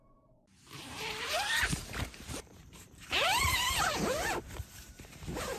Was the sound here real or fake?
fake